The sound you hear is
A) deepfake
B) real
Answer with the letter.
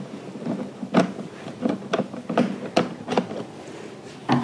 B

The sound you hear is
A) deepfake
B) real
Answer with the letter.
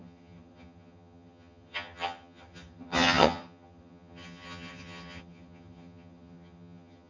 A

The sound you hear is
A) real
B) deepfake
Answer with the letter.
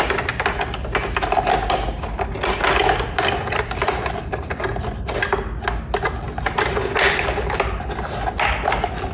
A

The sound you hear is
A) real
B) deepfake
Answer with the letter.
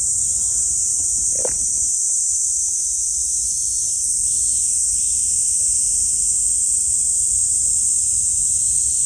A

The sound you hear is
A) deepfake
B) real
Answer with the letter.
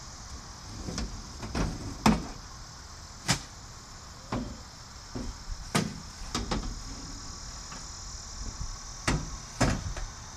B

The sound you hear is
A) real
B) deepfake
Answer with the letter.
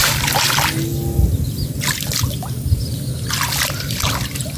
A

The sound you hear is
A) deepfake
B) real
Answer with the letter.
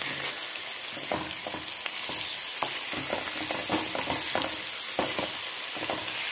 B